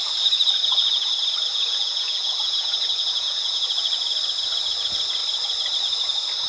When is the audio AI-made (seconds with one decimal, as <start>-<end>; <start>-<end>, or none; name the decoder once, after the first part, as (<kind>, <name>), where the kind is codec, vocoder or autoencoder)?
0.0-1.1 (vocoder, Vocos); 1.5-3.7